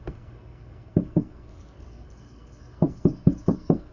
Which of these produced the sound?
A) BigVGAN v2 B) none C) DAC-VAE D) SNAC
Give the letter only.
D